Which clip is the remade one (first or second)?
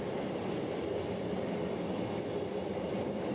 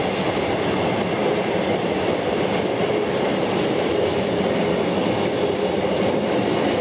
second